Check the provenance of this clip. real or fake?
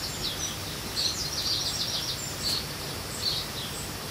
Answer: real